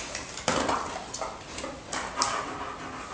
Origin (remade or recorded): recorded